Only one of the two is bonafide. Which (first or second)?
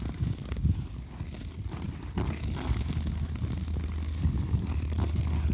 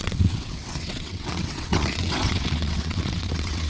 first